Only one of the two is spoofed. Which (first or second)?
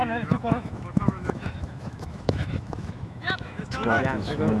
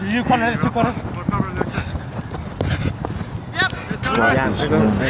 first